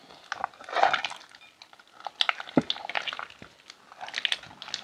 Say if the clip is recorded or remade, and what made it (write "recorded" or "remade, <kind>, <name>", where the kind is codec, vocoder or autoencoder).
recorded